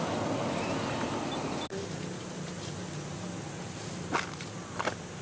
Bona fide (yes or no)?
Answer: yes